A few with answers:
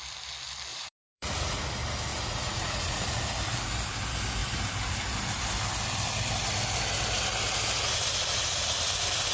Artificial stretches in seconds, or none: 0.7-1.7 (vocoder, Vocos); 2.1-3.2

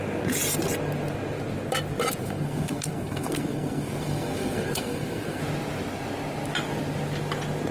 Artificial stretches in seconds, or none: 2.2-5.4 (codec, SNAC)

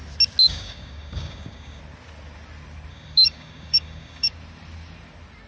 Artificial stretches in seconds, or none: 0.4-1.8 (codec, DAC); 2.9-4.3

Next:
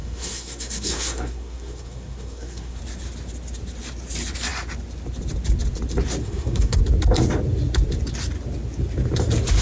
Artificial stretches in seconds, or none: 0.0-2.8 (codec, SNAC); 6.2-6.8

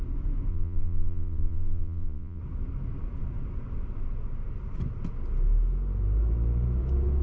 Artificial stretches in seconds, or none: 0.5-2.4 (vocoder, Vocos)

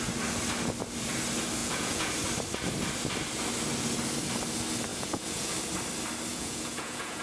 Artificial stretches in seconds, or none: 1.6-2.1 (vocoder, Vocos); 4.9-5.5; 6.3-7.2